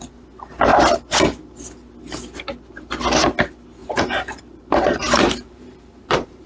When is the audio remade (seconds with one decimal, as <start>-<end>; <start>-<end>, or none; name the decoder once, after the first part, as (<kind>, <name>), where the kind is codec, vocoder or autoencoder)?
3.8-6.5 (vocoder, BigVGAN v2)